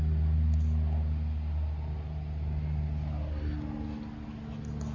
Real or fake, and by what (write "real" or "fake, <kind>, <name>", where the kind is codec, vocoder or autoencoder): real